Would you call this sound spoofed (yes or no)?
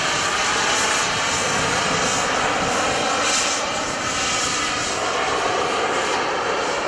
no